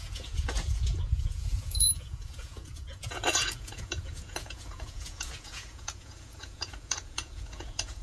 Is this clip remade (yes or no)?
yes